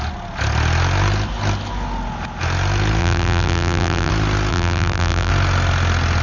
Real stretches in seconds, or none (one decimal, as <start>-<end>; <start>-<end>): 0.0-3.0; 4.1-4.5; 5.3-6.2